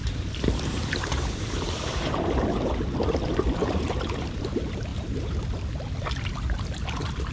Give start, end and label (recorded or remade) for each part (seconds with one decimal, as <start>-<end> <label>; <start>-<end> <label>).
0.0-2.7 remade; 2.7-3.6 recorded; 3.6-4.4 remade; 4.4-4.9 recorded; 4.9-5.4 remade; 5.4-7.3 recorded